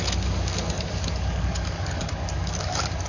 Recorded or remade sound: remade